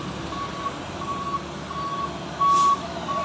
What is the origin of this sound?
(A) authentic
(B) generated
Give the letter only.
A